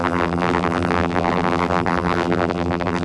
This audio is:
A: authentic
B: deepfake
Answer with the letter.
B